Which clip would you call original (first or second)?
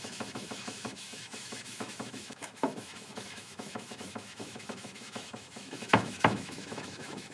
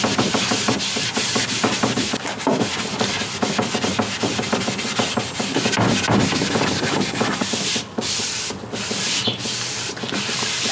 second